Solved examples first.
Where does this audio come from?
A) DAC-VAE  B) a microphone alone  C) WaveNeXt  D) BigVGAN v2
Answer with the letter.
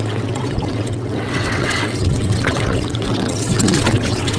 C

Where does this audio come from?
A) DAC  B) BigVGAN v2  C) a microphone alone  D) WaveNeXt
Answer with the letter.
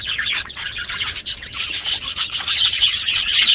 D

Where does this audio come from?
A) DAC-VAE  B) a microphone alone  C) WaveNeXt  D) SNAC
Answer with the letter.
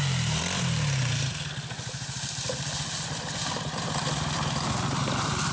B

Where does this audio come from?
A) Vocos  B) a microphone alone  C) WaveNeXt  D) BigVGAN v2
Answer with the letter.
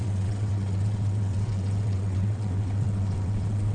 C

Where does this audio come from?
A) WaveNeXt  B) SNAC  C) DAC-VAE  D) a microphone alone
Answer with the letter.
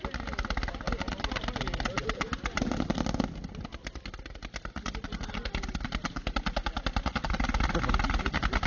D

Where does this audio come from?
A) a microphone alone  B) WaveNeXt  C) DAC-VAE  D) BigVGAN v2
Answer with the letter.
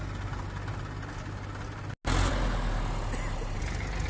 A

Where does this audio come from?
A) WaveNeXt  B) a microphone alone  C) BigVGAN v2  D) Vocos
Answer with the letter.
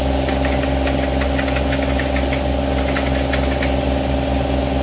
B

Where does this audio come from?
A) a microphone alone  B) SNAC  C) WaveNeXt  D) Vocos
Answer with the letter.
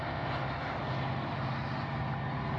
A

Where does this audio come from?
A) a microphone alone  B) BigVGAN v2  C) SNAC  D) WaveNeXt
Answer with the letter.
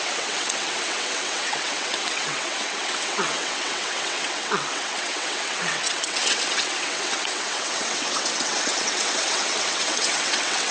D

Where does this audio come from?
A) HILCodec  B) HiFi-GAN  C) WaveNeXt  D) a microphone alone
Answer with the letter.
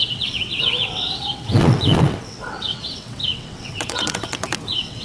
C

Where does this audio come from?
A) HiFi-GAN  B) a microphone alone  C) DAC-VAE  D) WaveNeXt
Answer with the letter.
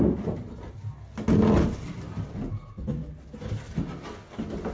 B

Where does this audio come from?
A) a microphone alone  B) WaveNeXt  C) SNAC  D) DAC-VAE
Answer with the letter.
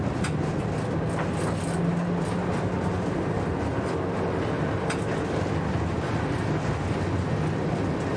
A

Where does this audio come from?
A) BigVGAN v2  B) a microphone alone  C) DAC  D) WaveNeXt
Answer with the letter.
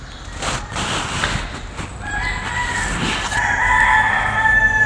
B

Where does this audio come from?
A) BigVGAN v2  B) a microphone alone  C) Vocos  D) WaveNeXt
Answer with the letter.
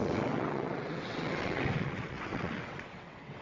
D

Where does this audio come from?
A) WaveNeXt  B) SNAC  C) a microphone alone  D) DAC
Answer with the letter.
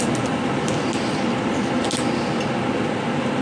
C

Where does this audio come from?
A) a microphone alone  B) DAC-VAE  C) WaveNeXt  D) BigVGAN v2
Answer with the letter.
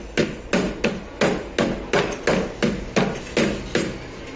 A